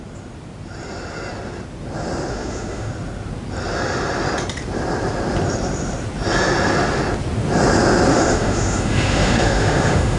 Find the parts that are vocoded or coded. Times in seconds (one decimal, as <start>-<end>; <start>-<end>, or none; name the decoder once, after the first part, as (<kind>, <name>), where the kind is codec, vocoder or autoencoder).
2.3-2.9 (autoencoder, DAC-VAE); 8.1-10.2

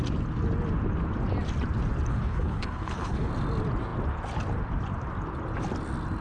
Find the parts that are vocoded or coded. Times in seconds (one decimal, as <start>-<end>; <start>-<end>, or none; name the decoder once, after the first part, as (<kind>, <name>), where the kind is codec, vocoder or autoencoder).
2.1-3.3 (codec, HILCodec)